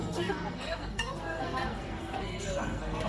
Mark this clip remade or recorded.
remade